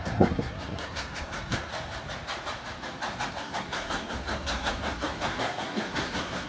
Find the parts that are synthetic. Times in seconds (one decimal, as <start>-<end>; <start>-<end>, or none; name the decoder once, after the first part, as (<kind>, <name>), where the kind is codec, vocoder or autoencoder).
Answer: 0.0-1.7 (codec, SNAC); 3.3-6.5